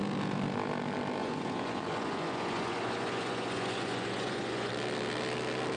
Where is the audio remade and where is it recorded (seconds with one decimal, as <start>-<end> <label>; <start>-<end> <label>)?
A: 0.0-1.2 recorded; 1.2-4.7 remade; 4.7-5.8 recorded